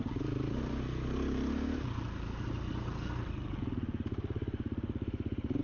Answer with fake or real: real